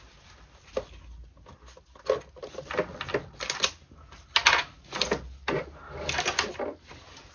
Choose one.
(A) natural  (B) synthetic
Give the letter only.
A